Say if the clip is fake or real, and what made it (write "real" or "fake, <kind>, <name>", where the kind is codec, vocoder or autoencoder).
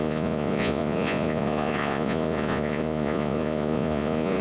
fake, vocoder, Vocos